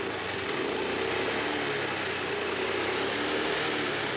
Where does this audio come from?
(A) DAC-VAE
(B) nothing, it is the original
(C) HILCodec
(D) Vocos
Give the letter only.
B